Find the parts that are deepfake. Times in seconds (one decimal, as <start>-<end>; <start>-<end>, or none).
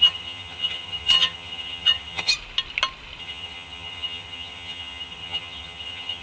0.0-2.3; 3.2-6.2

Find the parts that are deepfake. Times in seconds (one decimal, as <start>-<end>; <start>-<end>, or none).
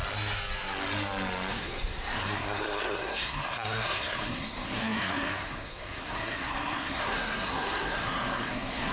1.5-8.9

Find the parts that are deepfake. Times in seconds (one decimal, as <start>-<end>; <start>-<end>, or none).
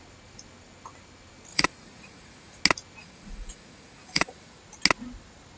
1.5-2.6; 3.0-4.6